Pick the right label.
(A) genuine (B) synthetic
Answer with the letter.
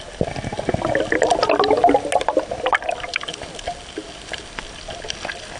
A